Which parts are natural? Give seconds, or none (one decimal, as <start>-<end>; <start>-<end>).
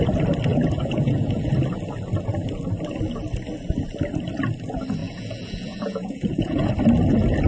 0.0-0.5; 1.5-5.0; 6.7-7.5